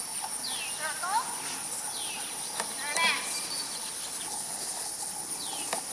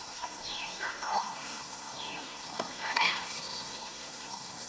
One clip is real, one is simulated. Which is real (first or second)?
first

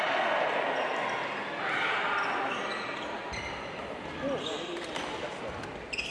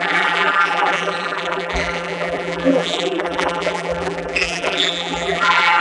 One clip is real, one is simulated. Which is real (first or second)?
first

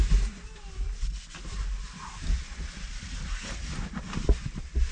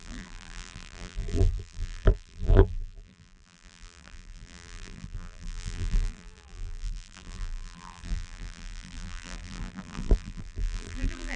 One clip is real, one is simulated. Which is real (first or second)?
first